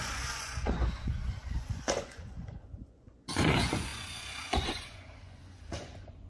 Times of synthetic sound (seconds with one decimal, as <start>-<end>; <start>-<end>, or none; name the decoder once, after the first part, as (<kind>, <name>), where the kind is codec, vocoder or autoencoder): 0.0-6.3 (vocoder, Vocos)